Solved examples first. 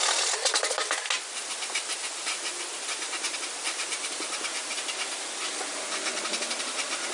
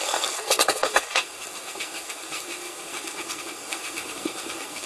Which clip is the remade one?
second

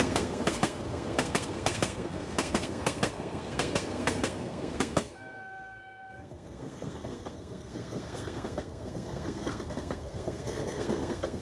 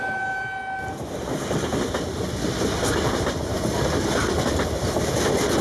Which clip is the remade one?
first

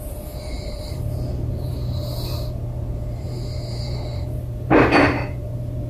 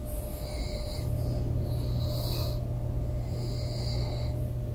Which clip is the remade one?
first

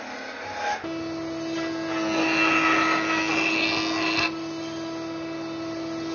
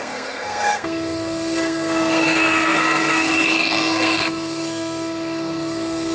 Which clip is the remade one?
second